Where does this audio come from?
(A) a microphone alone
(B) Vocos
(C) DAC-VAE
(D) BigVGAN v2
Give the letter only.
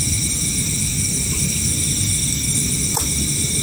A